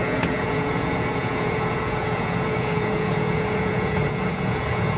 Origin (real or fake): fake